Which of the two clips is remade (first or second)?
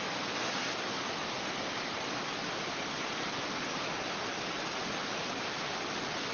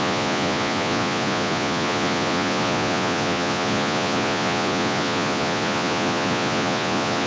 second